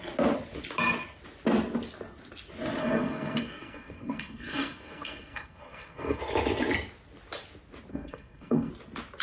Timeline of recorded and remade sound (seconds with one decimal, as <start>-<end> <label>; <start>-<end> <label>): 0.0-2.8 recorded; 2.8-6.2 remade; 6.2-7.9 recorded; 7.9-8.7 remade; 8.7-9.2 recorded